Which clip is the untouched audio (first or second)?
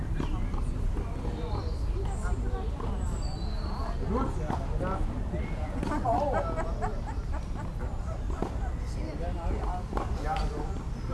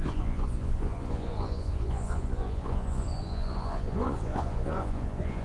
first